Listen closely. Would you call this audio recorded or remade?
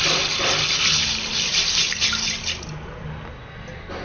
recorded